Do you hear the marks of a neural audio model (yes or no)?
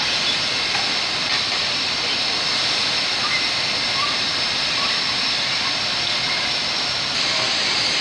yes